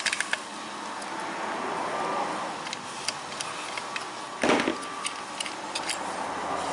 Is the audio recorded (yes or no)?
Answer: yes